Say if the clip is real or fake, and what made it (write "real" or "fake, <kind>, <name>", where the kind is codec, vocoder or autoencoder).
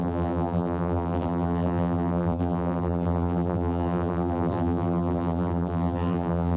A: fake, vocoder, BigVGAN v2